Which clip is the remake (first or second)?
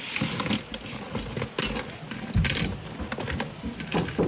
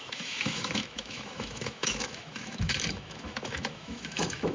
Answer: second